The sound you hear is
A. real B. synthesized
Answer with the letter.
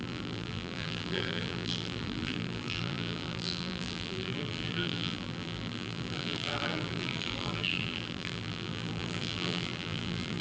B